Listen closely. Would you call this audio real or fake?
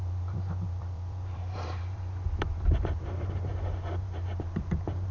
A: fake